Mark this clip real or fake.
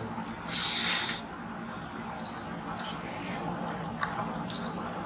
real